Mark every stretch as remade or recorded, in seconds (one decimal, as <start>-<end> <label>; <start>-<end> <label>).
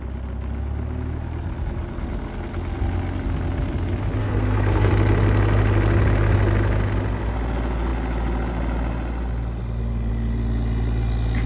0.0-4.2 recorded; 4.2-4.9 remade; 4.9-11.5 recorded